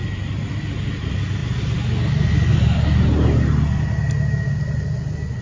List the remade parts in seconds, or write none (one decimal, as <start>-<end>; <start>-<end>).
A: none